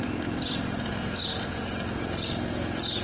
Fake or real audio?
real